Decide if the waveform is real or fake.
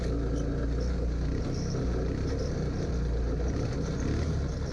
real